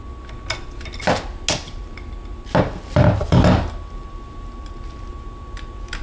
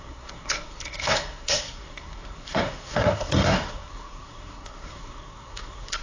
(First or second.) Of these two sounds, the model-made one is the second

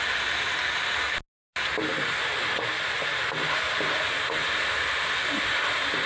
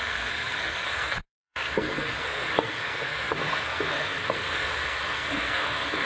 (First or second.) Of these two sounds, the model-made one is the second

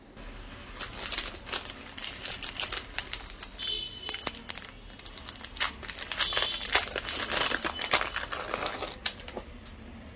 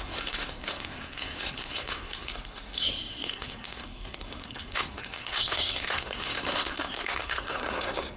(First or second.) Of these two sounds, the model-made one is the second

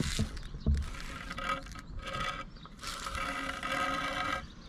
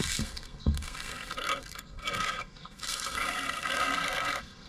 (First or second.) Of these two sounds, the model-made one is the second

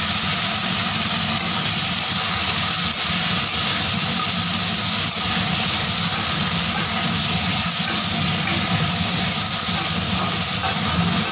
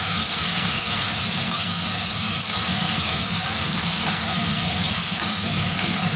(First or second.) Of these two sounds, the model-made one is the second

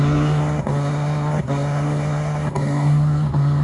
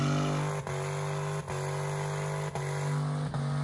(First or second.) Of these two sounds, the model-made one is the first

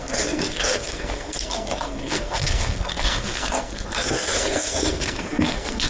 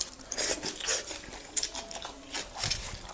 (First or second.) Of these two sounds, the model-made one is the first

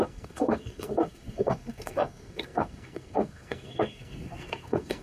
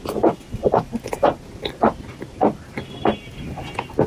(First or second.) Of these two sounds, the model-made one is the first